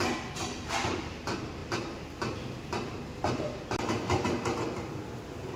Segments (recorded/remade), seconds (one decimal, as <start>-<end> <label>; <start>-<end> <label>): 0.0-5.6 recorded